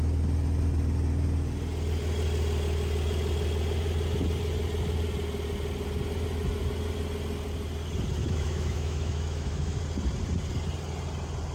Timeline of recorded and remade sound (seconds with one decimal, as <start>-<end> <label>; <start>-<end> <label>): 0.0-8.2 recorded; 8.2-9.8 remade; 9.8-11.5 recorded